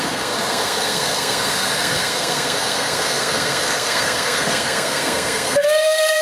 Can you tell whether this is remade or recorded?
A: remade